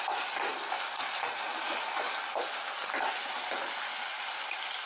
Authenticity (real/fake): real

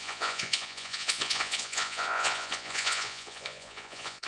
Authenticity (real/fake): fake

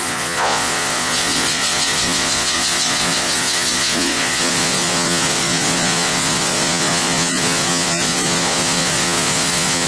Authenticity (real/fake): fake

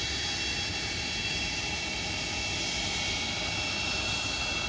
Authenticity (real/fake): real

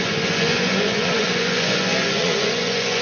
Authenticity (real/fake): fake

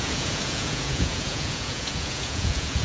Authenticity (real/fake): fake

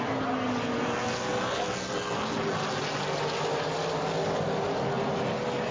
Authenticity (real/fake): real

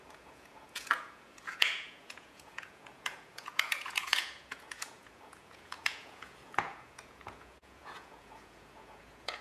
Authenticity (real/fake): fake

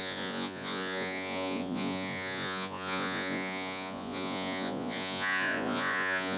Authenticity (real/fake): fake